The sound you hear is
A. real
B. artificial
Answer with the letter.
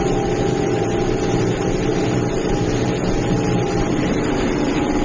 B